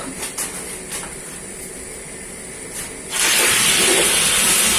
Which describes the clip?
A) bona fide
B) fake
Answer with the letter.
A